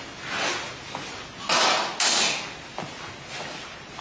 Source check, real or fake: real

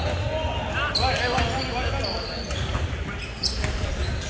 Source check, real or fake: real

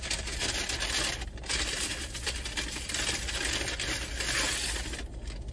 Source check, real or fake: real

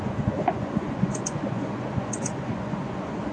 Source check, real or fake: fake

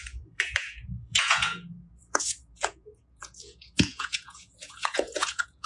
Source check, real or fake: fake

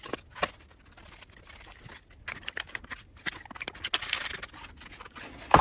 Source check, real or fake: real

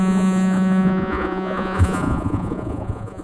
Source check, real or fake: fake